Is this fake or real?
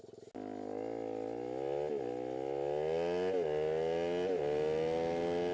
real